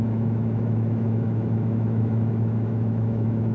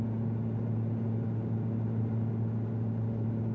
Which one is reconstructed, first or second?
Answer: first